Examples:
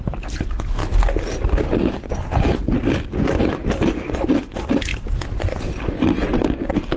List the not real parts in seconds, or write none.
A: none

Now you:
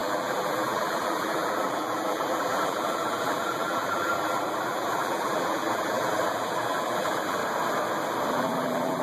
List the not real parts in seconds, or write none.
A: 0.0-7.4 (vocoder, BigVGAN v2); 8.3-9.0

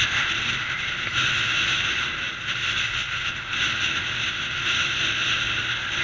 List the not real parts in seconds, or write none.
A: none

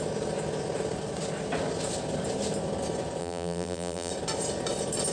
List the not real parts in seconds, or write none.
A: 3.2-4.1 (vocoder, BigVGAN v2)